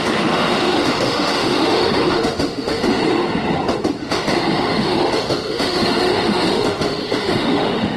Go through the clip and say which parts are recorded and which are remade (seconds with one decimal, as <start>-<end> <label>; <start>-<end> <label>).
0.0-3.0 remade; 3.0-4.0 recorded; 4.0-8.0 remade